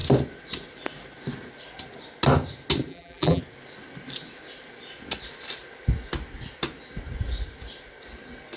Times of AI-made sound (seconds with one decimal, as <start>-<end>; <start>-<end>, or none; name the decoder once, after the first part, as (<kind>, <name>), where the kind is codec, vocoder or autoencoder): 2.9-3.4 (vocoder, BigVGAN v2)